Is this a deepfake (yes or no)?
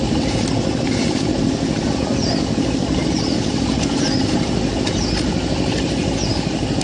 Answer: no